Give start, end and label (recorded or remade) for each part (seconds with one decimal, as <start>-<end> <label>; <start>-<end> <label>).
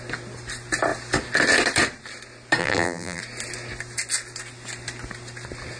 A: 0.0-2.6 recorded; 2.6-3.2 remade; 3.2-5.8 recorded